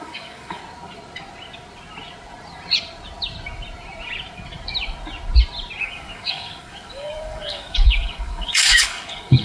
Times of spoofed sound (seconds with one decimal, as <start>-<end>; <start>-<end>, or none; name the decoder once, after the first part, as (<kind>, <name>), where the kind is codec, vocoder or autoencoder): 0.0-0.6 (codec, DAC); 5.8-9.4